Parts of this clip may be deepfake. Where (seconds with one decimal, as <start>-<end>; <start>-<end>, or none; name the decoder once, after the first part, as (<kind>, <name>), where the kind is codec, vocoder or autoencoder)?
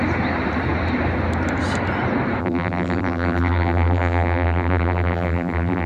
2.4-5.9 (vocoder, BigVGAN v2)